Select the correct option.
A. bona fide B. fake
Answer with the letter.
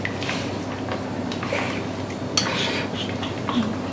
A